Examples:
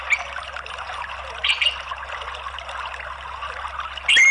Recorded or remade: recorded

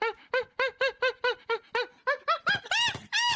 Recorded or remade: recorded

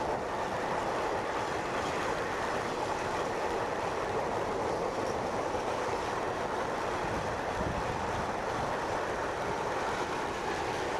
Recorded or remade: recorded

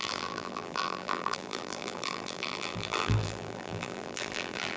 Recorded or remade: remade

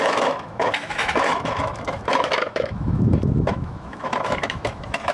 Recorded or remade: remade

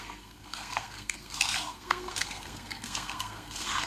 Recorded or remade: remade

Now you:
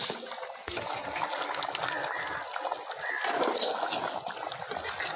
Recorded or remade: recorded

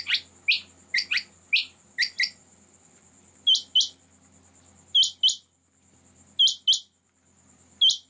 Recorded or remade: recorded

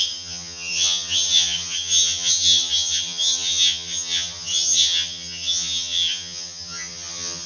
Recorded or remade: remade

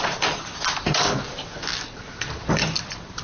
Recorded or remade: recorded